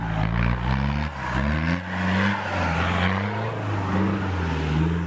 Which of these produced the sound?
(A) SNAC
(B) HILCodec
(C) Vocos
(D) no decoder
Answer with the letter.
D